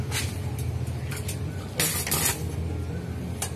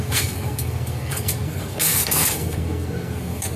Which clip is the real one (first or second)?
first